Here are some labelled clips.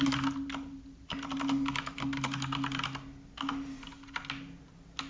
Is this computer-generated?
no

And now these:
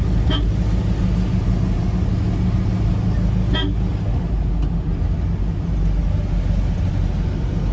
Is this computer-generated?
no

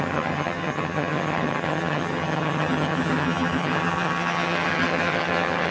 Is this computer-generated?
yes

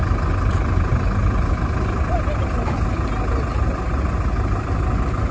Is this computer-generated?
no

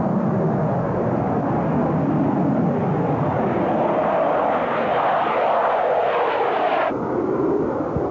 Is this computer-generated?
no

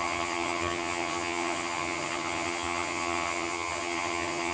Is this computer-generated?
yes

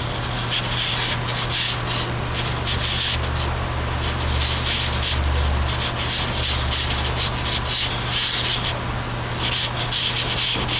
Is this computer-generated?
no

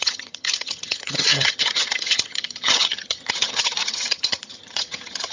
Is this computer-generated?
yes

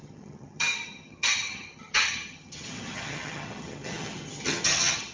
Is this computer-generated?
yes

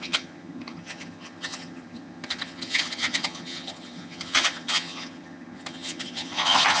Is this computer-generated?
yes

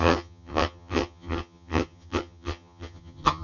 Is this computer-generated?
yes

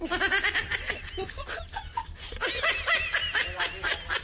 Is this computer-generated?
no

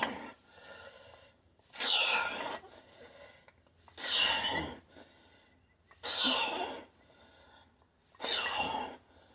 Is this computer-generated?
no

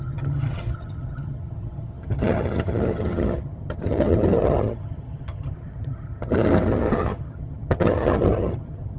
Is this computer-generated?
yes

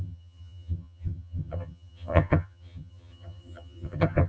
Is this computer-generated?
yes